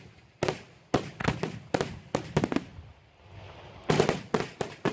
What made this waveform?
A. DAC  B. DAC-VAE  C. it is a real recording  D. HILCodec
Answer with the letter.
C